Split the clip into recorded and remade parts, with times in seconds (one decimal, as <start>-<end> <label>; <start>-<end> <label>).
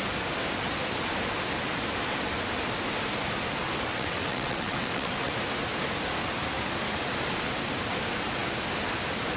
0.0-3.9 recorded; 3.9-5.3 remade; 5.3-9.4 recorded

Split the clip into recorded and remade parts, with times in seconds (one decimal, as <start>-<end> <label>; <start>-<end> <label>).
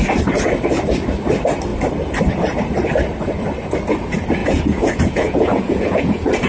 0.0-4.4 recorded; 4.4-6.5 remade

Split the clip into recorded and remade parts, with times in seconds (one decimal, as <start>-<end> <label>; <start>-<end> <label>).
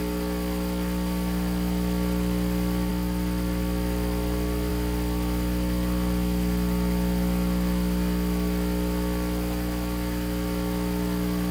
0.0-11.5 recorded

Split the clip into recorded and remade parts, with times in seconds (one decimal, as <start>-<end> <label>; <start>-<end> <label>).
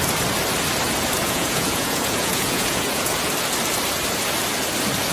0.0-1.2 recorded; 1.2-3.3 remade; 3.3-5.1 recorded